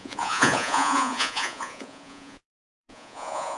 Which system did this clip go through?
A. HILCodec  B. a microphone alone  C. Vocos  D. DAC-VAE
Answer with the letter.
C